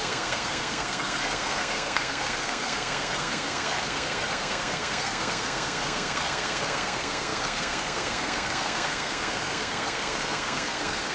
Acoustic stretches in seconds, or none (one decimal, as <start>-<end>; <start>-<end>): none